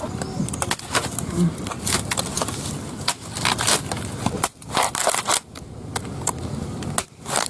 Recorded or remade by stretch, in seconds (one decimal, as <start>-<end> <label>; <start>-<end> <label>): 0.0-7.5 recorded